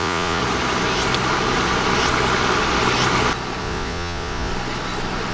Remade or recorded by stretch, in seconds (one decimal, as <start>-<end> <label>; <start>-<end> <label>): 0.0-0.4 remade; 0.4-3.6 recorded; 3.6-4.5 remade; 4.5-5.3 recorded

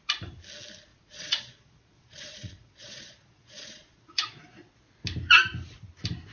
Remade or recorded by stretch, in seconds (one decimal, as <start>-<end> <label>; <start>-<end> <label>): 0.0-0.9 recorded; 0.9-4.7 remade; 4.7-6.3 recorded